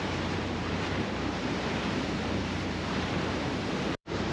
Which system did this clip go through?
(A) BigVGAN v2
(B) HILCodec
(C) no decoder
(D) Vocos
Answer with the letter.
A